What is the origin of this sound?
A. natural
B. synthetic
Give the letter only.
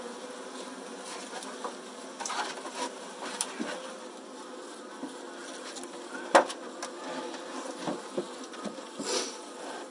A